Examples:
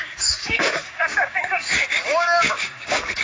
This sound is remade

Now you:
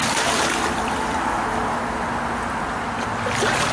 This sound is recorded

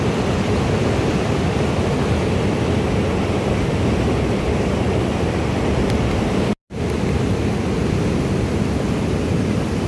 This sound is recorded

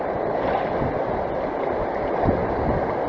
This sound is recorded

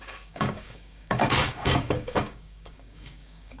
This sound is remade